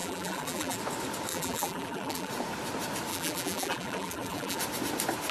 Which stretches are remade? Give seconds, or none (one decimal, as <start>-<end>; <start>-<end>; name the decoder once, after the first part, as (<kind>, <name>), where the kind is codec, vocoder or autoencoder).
0.0-0.8 (vocoder, BigVGAN v2); 1.3-2.3; 3.1-4.6